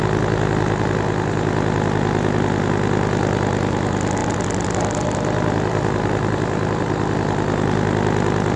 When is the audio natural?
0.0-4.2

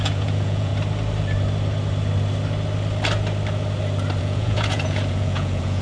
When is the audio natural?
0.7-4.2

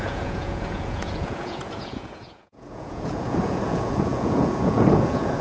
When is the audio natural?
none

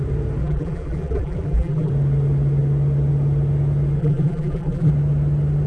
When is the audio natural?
0.0-0.4; 1.9-4.0; 4.9-5.7

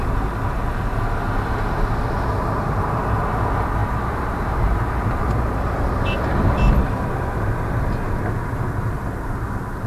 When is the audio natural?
0.0-3.8; 8.3-9.9